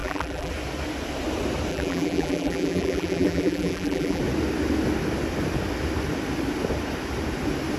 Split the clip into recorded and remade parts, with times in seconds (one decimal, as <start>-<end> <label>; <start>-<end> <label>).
0.0-0.5 remade; 0.5-1.7 recorded; 1.7-4.2 remade; 4.2-7.8 recorded

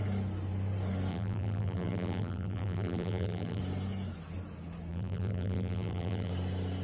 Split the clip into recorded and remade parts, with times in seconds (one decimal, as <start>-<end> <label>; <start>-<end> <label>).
0.0-1.1 recorded; 1.1-3.6 remade; 3.6-4.9 recorded; 4.9-6.3 remade; 6.3-6.8 recorded

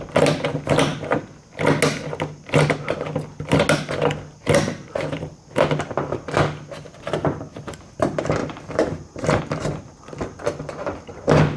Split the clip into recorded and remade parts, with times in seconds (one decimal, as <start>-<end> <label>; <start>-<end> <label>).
0.0-8.4 recorded; 8.4-9.4 remade; 9.4-11.6 recorded